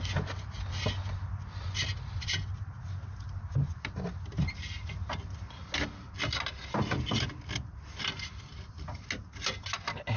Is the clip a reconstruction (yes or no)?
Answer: no